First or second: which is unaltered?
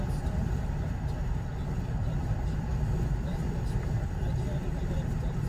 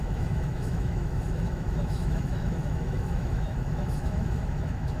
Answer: first